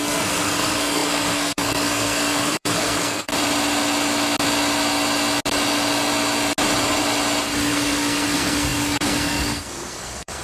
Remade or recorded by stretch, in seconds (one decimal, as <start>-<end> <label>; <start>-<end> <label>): 0.0-3.3 remade; 3.3-7.7 recorded; 7.7-10.4 remade